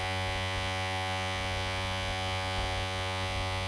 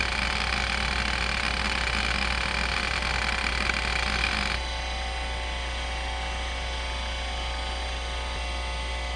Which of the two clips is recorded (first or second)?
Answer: second